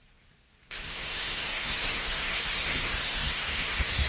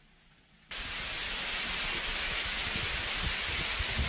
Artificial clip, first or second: first